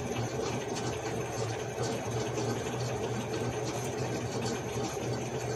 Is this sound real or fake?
fake